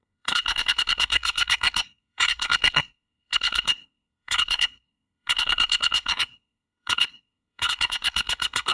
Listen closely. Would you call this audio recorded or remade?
remade